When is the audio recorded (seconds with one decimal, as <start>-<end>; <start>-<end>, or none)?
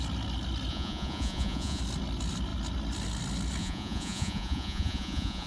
0.0-0.7; 1.8-3.6